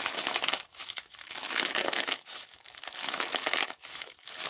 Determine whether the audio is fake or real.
fake